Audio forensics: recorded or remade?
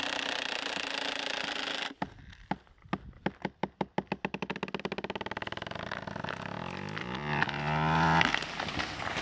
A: recorded